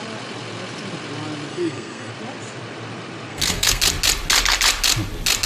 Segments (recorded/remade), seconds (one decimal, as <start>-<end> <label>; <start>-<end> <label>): 0.0-1.5 recorded; 1.5-2.1 remade; 2.1-3.3 recorded; 3.3-3.8 remade; 3.8-5.5 recorded